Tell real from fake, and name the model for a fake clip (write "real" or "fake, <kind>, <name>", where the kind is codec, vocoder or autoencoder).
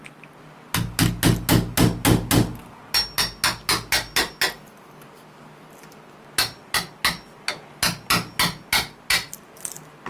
real